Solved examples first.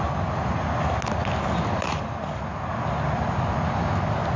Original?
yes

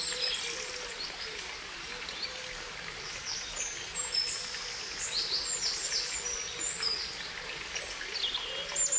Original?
yes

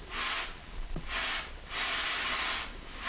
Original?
yes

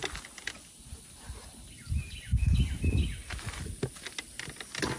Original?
yes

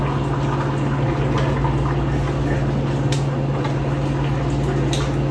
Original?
yes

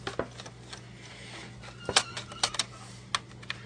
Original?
yes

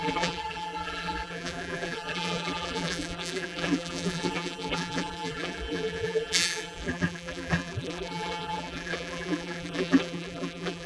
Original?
no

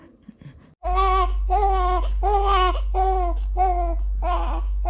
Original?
yes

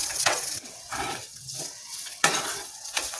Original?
no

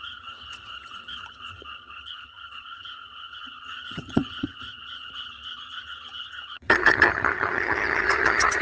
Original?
no